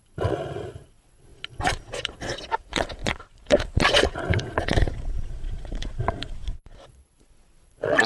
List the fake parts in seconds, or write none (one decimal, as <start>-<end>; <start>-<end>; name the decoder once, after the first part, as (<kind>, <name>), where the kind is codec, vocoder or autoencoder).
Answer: 0.0-8.1 (vocoder, Vocos)